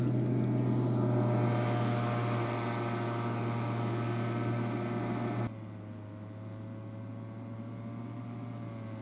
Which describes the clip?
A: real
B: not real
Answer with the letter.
A